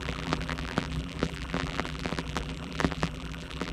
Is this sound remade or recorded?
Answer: remade